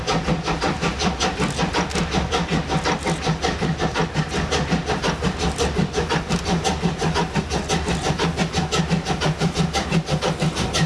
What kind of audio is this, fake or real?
real